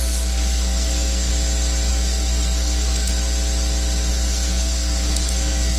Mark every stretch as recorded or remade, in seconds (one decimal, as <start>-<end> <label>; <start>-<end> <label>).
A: 0.0-1.3 remade; 1.3-1.9 recorded; 1.9-3.1 remade; 3.1-4.1 recorded; 4.1-5.8 remade